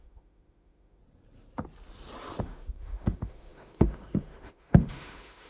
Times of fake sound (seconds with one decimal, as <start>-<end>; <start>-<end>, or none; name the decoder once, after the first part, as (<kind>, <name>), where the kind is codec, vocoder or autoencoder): 0.0-1.0 (autoencoder, DAC-VAE); 2.4-5.5